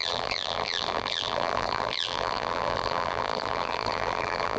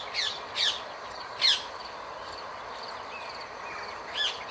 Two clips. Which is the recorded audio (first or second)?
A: second